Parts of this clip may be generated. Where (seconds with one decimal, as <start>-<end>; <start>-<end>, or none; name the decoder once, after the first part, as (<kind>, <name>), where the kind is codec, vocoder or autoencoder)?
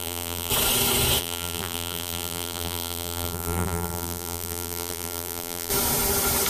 0.0-0.5 (vocoder, BigVGAN v2); 1.2-5.7